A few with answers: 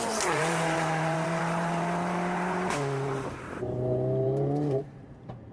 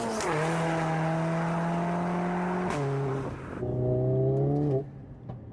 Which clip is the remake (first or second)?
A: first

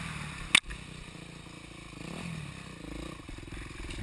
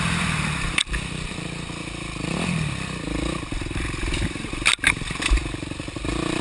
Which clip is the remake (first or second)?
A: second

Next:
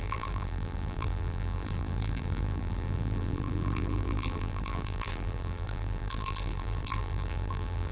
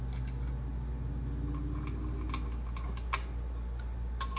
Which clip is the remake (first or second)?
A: first